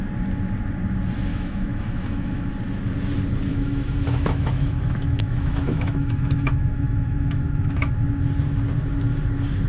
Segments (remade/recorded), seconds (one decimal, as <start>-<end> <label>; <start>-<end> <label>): 0.0-1.3 recorded; 1.3-2.5 remade; 2.5-3.5 recorded; 3.5-7.9 remade; 7.9-9.7 recorded